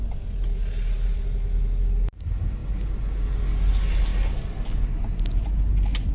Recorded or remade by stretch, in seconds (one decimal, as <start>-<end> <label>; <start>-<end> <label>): 0.0-6.1 recorded